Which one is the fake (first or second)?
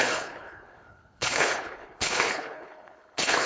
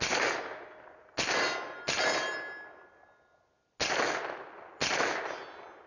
first